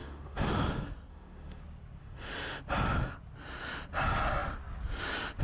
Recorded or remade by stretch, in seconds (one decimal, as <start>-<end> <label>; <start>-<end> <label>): 0.0-0.5 remade; 0.5-1.1 recorded; 1.1-1.6 remade; 1.6-2.0 recorded; 2.0-2.6 remade; 2.6-5.4 recorded